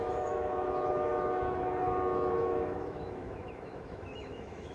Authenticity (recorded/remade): remade